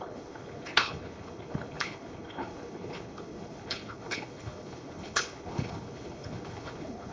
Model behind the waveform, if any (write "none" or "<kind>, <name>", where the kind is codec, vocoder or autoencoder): codec, HILCodec